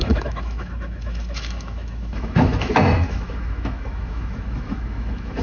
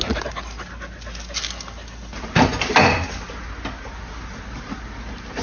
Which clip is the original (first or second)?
second